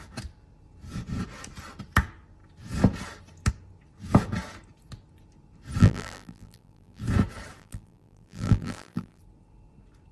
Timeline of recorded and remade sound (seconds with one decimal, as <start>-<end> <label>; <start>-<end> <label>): 0.0-5.8 recorded; 5.8-7.0 remade; 7.0-7.6 recorded; 7.6-9.2 remade; 9.2-10.1 recorded